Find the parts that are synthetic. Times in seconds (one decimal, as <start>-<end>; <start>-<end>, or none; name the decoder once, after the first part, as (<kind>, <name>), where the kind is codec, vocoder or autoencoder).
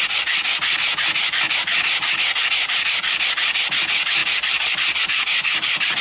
none